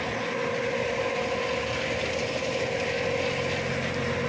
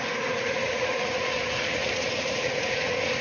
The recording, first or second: first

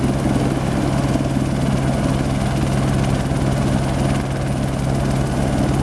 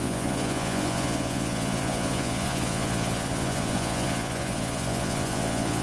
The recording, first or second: first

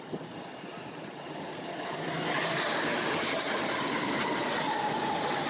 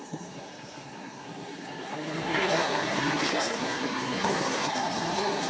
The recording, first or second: first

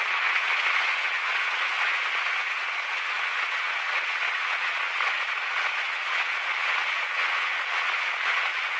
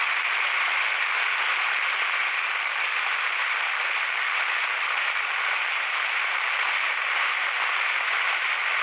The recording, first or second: second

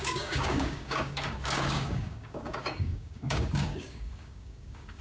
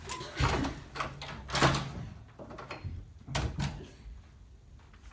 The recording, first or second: second